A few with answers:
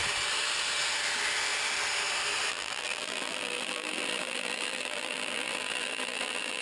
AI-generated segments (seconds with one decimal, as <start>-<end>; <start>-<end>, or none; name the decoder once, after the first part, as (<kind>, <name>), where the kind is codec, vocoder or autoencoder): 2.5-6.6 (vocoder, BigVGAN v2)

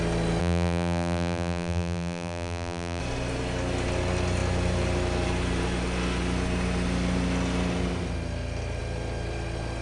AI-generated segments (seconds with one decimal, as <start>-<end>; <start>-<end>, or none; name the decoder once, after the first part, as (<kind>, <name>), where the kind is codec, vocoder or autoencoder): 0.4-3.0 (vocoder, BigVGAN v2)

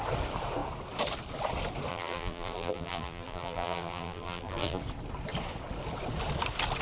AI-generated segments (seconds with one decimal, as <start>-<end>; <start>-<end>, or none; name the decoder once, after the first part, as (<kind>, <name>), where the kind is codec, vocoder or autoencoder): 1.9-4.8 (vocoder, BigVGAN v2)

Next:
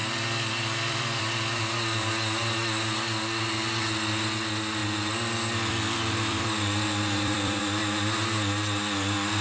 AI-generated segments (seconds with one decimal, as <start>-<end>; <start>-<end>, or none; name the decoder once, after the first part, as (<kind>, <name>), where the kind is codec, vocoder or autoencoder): 0.0-1.6 (vocoder, BigVGAN v2); 4.8-7.6